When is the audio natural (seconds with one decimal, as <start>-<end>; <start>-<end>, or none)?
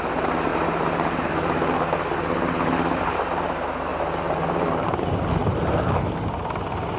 0.0-7.0